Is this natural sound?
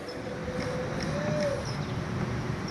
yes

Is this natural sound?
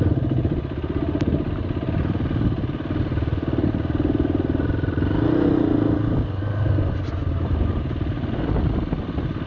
yes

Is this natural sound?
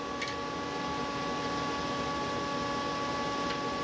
yes